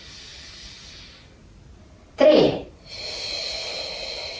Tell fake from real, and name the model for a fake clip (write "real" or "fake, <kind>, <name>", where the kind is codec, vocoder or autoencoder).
real